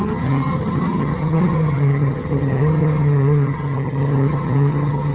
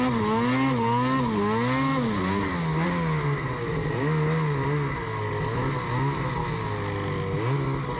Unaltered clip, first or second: second